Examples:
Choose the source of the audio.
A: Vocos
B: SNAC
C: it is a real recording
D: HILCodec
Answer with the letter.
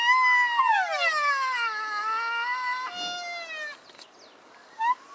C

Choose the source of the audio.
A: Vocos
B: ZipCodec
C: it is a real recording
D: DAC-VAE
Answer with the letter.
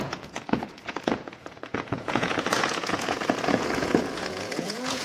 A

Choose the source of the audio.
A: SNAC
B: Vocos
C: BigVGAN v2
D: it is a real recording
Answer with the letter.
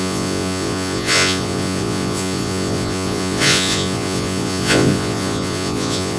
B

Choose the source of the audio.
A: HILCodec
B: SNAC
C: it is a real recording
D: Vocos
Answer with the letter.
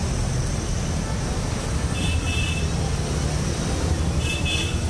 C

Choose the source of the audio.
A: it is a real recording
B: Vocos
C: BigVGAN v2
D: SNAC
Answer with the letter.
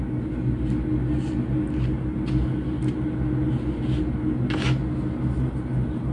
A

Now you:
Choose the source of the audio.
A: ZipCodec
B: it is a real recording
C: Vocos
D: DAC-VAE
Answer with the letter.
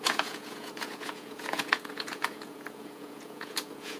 C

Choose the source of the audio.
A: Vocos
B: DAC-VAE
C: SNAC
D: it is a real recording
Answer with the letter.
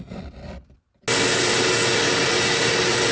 D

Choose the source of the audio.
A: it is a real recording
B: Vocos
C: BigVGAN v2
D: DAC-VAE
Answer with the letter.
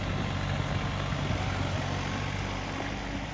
A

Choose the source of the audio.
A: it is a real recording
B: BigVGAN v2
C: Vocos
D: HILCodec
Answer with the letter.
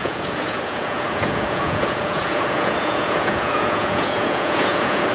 C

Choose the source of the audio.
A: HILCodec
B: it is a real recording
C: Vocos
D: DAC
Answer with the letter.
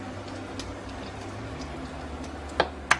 B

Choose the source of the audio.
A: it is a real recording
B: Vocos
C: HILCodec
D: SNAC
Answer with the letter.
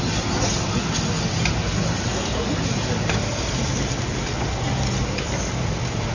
A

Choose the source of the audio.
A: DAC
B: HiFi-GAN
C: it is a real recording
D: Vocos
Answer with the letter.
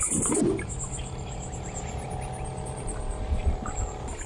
C